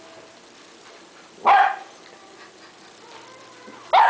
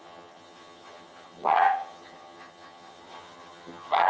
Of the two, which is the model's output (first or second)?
second